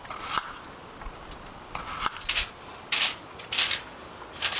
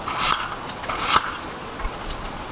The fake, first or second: second